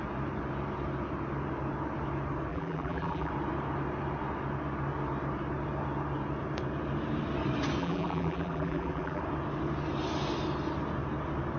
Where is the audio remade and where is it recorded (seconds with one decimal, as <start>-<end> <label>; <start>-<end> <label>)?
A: 0.0-2.5 recorded; 2.5-3.3 remade; 3.3-7.8 recorded; 7.8-9.2 remade; 9.2-11.6 recorded